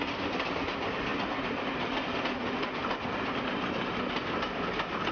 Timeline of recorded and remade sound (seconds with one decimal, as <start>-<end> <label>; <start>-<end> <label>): 0.0-5.1 recorded